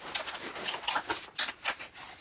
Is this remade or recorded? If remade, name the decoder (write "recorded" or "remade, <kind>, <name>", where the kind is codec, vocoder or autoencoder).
recorded